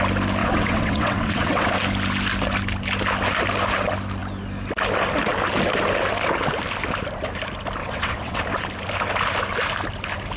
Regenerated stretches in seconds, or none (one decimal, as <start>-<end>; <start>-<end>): 0.4-1.7; 7.8-8.4